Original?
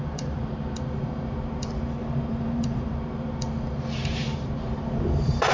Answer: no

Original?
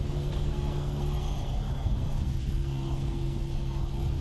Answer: no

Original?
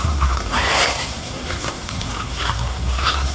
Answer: no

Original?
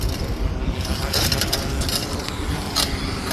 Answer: yes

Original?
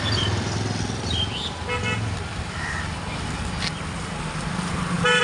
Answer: yes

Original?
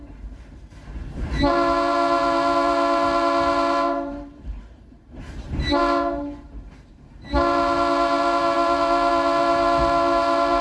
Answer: no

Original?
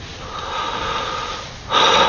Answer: yes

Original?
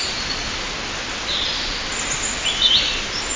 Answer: yes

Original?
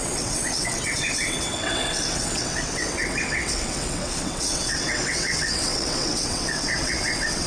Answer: no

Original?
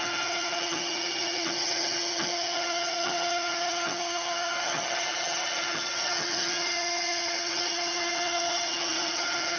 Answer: no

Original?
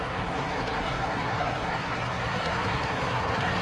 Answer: no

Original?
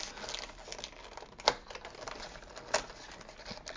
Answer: yes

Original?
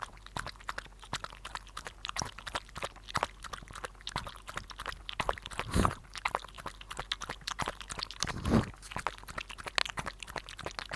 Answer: yes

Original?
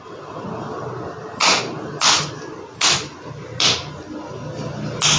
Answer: yes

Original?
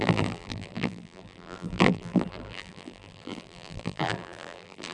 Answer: no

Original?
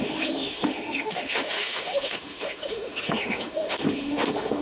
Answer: no